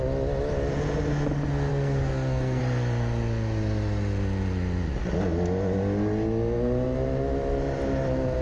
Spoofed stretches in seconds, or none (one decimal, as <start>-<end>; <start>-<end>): 1.7-2.6